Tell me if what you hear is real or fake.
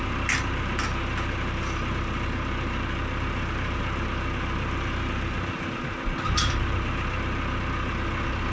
real